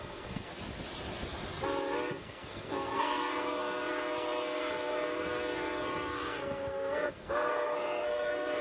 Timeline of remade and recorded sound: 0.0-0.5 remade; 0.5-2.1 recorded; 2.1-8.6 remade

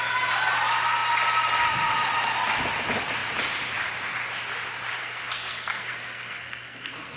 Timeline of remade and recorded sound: 0.0-5.0 recorded; 5.0-7.2 remade

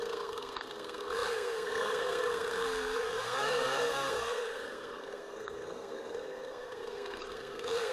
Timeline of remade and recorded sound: 0.0-7.9 remade